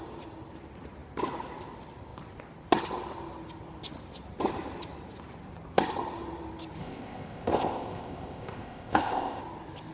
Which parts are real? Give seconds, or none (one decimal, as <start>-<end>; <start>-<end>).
0.0-6.8; 9.4-9.9